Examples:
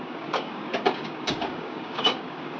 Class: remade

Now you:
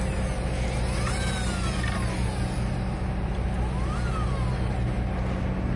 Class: recorded